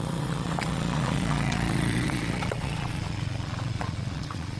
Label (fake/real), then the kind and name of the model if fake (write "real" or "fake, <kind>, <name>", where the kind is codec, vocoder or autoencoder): fake, vocoder, Vocos